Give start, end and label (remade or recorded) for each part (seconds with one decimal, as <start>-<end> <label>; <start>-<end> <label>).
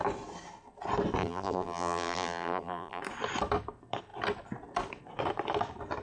0.0-1.2 recorded; 1.2-3.0 remade; 3.0-6.0 recorded